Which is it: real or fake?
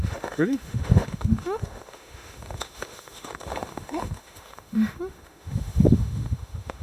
fake